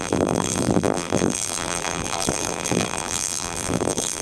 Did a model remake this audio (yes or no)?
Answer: yes